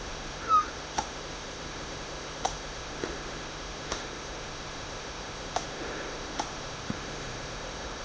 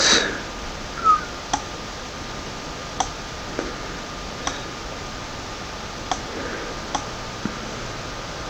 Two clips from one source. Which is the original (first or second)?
second